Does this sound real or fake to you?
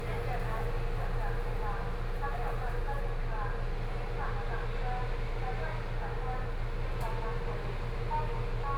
real